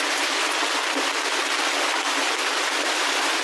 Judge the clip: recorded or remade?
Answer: recorded